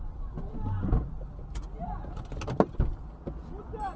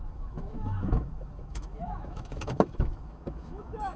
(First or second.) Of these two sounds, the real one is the first